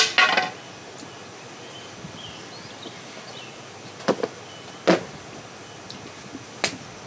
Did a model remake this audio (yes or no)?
no